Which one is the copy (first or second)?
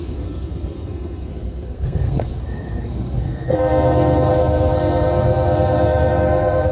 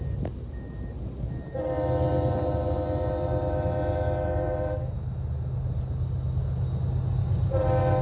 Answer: first